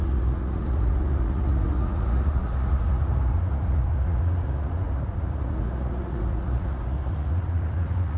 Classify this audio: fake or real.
fake